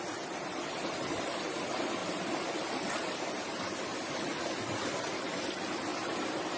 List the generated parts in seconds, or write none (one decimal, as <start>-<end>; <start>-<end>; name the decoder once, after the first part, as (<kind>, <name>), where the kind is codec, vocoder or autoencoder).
none